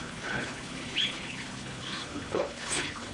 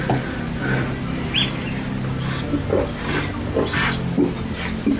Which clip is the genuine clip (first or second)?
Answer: second